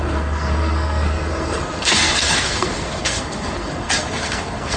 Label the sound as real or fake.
fake